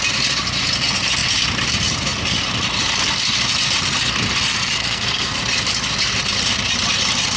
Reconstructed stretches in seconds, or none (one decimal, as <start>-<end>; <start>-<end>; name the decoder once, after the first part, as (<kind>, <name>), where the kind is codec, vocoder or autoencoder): 4.5-5.4 (codec, SNAC)